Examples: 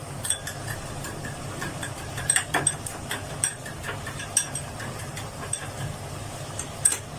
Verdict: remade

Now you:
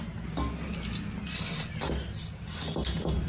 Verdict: recorded